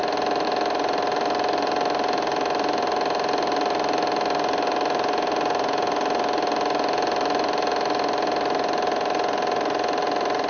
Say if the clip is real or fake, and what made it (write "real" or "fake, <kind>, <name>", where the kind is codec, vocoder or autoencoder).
real